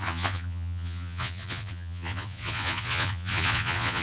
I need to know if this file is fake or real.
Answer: fake